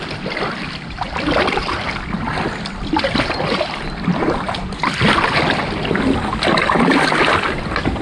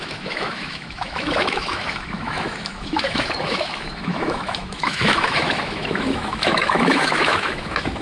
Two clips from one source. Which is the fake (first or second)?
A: second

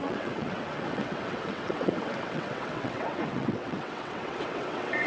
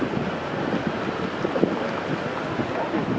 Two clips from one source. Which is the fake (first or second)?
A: first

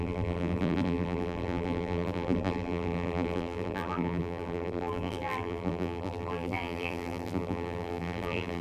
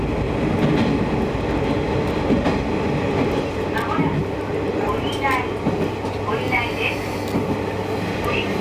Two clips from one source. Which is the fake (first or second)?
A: first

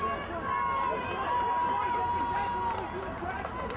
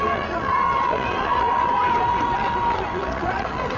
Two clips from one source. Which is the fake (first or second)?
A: second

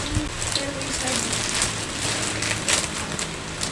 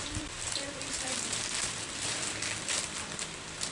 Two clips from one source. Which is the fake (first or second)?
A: second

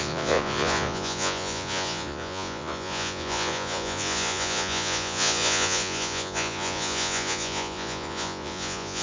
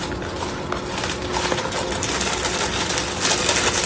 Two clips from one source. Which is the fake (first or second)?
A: first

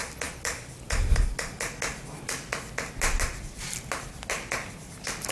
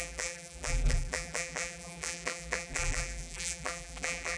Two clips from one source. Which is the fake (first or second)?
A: second